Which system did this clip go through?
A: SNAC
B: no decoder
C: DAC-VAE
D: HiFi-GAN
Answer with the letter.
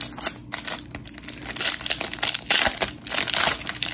B